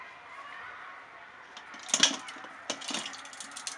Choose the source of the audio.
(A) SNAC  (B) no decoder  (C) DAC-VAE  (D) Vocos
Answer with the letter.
B